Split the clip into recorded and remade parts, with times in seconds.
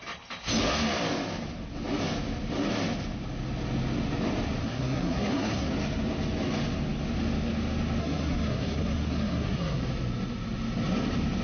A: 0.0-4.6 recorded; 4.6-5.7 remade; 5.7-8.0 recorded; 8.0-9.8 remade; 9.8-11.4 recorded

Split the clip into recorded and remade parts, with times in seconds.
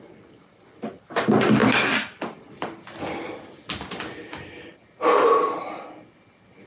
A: 0.0-6.7 recorded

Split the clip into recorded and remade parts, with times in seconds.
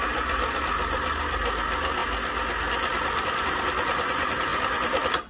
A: 0.0-5.3 recorded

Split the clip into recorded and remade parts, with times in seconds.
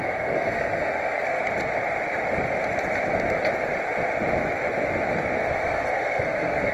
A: 0.0-1.4 remade; 1.4-5.4 recorded; 5.4-6.7 remade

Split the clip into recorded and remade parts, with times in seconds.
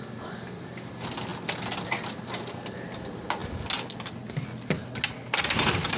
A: 0.0-6.0 recorded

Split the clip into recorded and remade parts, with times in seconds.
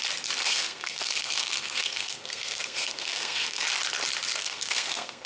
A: 0.0-0.4 recorded; 0.4-3.6 remade; 3.6-4.4 recorded; 4.4-5.3 remade